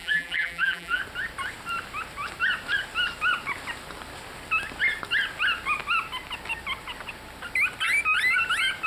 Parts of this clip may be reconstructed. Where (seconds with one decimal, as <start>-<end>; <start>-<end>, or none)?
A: 0.0-1.0